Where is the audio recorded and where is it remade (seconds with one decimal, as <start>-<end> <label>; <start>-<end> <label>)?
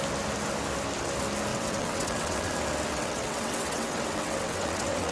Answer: 0.0-1.5 recorded; 1.5-2.5 remade; 2.5-2.9 recorded; 2.9-5.1 remade